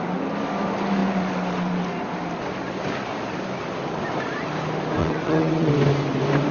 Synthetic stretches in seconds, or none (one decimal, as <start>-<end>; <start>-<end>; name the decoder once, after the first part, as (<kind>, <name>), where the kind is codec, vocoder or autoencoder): 5.0-5.7 (vocoder, WaveNeXt)